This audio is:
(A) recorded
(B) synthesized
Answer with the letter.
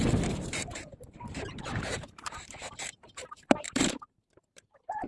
B